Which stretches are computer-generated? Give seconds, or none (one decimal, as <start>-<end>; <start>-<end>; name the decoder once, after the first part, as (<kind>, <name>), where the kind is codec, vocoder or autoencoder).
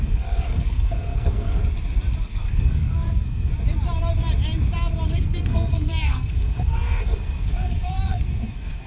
0.0-1.6 (codec, SNAC); 2.2-3.5; 5.1-8.9